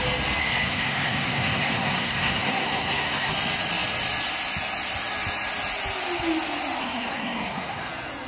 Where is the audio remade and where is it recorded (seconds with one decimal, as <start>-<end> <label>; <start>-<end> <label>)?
0.0-0.4 recorded; 0.4-3.3 remade; 3.3-6.8 recorded; 6.8-7.9 remade; 7.9-8.3 recorded